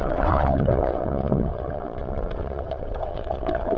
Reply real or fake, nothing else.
fake